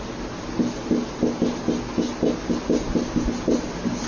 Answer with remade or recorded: recorded